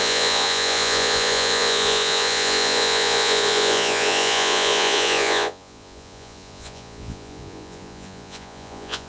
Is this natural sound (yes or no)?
no